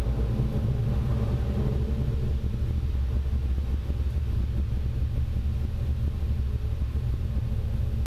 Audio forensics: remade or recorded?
recorded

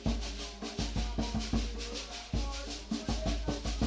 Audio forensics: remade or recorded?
recorded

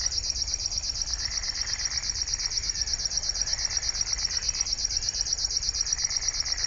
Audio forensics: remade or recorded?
recorded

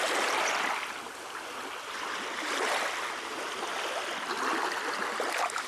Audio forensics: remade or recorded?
recorded